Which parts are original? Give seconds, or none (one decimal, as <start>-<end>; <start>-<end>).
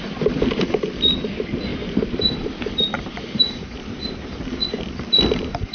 0.0-1.7; 4.8-5.7